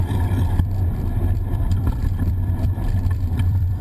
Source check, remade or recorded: remade